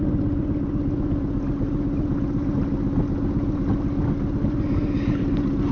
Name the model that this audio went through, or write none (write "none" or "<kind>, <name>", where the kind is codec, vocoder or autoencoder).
none